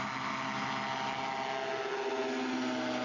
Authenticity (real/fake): real